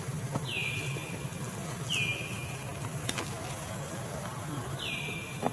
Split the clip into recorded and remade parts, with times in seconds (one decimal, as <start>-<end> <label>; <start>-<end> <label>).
0.0-5.5 recorded